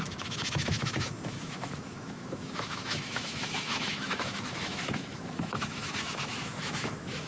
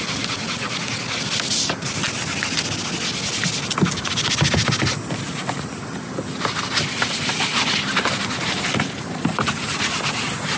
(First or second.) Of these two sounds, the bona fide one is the second